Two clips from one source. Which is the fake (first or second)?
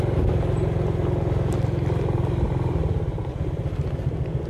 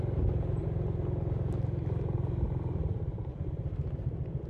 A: second